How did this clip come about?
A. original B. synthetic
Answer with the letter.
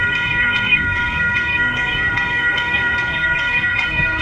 B